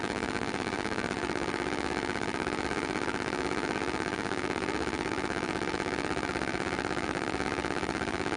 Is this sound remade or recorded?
remade